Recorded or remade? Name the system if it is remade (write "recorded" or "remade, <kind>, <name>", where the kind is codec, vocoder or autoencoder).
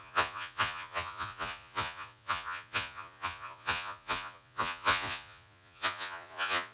remade, vocoder, Vocos